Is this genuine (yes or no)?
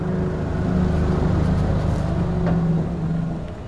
yes